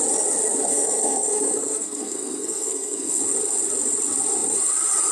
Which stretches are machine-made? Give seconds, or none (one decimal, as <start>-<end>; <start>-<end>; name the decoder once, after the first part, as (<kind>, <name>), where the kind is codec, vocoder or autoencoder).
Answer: 0.7-3.2 (codec, SNAC)